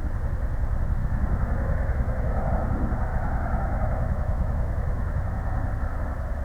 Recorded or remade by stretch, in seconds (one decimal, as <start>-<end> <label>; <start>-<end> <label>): 0.0-1.0 recorded; 1.0-2.5 remade; 2.5-3.1 recorded; 3.1-5.7 remade; 5.7-6.4 recorded